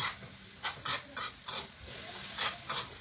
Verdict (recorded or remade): recorded